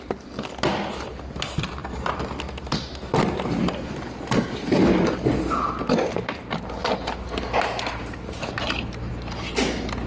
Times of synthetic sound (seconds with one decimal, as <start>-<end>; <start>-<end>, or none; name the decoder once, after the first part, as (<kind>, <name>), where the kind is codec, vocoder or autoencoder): none